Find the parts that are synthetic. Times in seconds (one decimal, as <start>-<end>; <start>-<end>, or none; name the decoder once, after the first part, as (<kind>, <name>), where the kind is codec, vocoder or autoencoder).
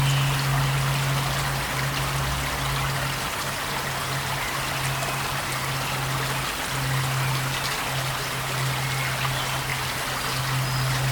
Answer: none